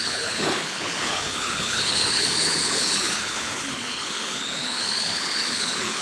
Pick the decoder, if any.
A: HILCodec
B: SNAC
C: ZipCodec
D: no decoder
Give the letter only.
A